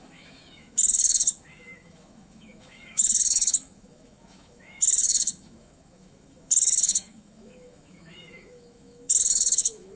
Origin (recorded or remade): remade